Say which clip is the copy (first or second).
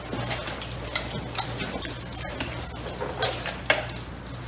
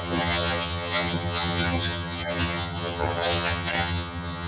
second